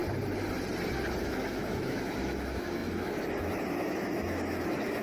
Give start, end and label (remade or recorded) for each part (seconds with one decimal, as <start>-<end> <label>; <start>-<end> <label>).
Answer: 0.0-1.2 recorded; 1.2-5.0 remade